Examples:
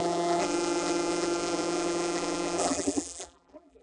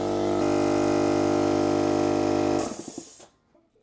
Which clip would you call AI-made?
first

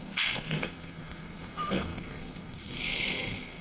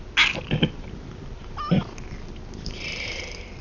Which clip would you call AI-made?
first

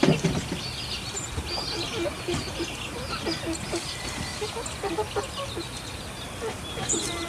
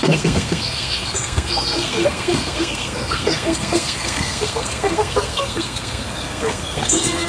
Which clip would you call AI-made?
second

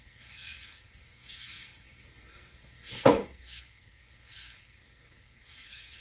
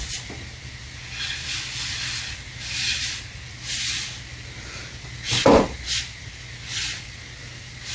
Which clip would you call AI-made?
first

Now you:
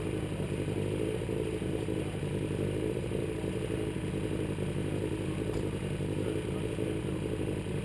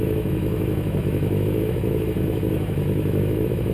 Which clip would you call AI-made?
second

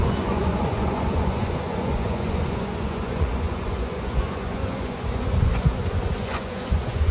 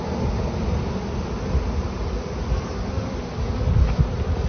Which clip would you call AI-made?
first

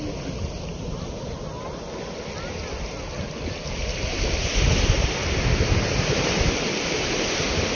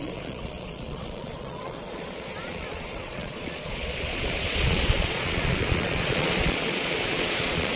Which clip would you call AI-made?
second